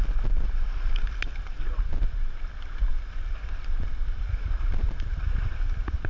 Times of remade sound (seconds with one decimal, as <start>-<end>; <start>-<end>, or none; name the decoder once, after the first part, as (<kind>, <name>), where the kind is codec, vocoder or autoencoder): none